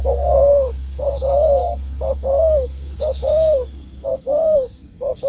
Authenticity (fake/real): fake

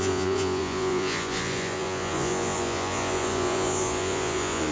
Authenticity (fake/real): fake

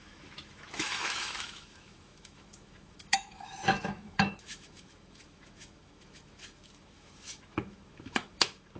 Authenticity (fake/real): fake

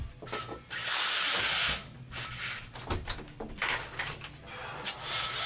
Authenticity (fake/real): real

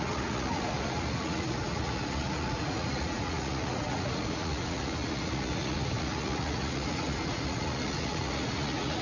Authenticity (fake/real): fake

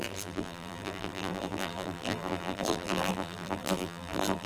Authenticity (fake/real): fake